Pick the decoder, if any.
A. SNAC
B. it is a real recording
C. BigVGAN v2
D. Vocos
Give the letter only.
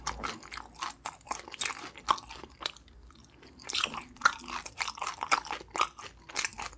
B